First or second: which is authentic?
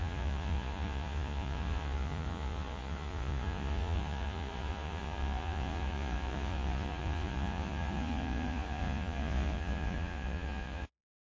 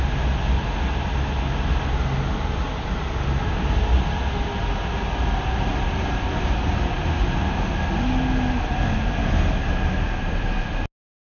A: second